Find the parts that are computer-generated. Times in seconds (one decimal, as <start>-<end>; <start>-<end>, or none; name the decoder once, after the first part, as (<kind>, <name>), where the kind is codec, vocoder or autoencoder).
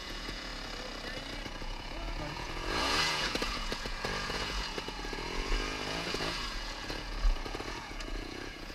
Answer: 0.0-0.5 (vocoder, Vocos); 1.5-8.7